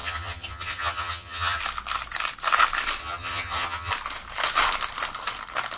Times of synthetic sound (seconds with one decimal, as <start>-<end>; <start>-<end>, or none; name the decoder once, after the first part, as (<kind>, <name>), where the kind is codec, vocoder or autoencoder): 0.0-1.6 (vocoder, HiFi-GAN); 3.0-3.9